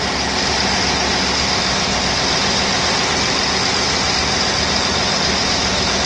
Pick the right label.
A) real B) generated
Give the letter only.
A